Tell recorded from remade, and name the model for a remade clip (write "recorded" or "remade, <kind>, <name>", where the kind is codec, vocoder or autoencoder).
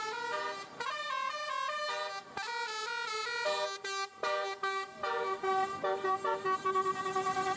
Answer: recorded